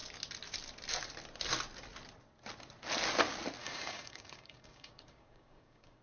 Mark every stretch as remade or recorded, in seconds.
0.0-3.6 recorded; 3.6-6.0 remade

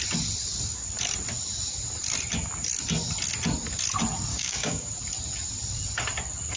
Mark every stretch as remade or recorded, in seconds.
0.0-4.3 recorded; 4.3-4.9 remade; 4.9-6.6 recorded

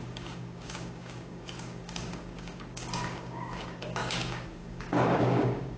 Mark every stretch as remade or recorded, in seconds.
0.0-5.8 remade